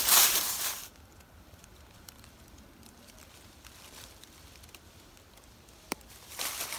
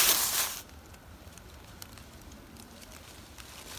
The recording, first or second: second